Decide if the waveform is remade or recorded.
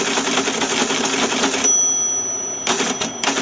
remade